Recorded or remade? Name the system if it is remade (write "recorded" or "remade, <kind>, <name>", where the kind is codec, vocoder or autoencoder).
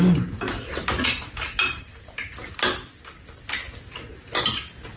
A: recorded